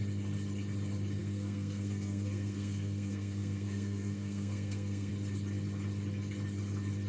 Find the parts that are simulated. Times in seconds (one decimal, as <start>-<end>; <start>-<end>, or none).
1.2-5.1